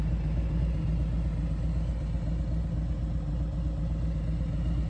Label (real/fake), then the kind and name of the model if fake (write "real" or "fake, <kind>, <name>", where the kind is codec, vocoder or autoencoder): real